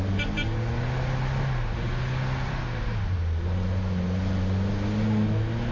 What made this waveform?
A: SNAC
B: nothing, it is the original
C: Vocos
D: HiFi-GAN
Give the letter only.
B